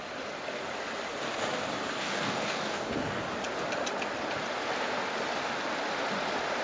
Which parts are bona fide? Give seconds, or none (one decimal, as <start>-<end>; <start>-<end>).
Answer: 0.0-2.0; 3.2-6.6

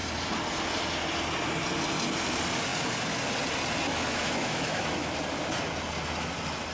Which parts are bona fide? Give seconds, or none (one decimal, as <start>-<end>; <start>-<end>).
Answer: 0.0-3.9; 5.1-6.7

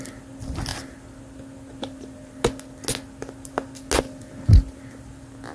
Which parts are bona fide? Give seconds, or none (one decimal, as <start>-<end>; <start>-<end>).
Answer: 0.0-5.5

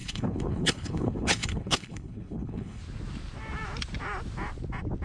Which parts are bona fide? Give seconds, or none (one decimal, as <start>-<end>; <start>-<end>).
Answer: 2.8-5.0

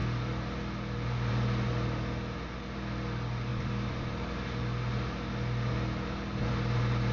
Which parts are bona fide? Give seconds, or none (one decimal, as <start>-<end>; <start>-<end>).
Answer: 0.0-3.5; 4.1-7.1

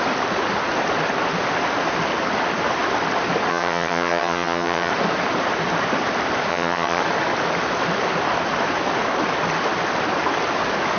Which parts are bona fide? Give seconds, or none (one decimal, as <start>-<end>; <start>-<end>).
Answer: 0.0-3.5; 4.9-6.5; 7.0-11.0